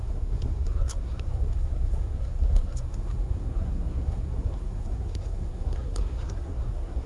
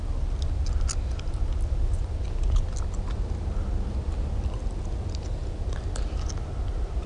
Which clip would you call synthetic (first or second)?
first